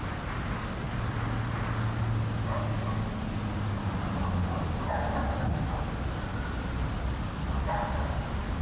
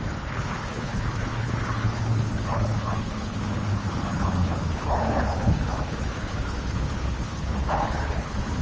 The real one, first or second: first